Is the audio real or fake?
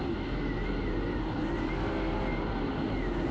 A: real